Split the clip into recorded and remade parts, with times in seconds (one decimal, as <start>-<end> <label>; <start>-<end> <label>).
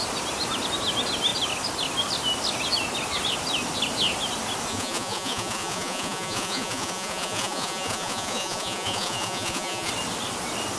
0.0-4.7 recorded; 4.7-9.9 remade; 9.9-10.8 recorded